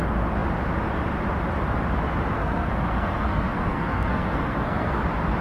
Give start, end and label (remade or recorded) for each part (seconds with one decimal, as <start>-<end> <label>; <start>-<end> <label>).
0.0-2.3 recorded; 2.3-5.0 remade; 5.0-5.4 recorded